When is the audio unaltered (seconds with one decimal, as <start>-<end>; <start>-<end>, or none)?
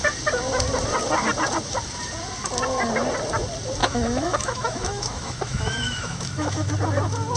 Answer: 0.0-3.8; 6.7-7.4